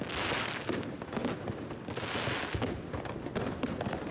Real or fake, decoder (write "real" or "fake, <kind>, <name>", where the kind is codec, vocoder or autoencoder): real